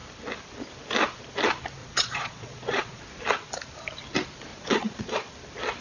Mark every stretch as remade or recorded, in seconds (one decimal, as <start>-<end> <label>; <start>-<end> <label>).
0.0-1.8 recorded; 1.8-3.0 remade; 3.0-4.5 recorded; 4.5-5.3 remade; 5.3-5.8 recorded